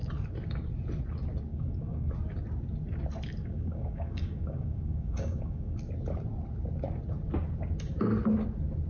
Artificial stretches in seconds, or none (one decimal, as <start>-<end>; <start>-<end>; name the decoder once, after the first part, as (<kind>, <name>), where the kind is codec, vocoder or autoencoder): 1.5-2.1 (codec, DAC); 3.4-5.8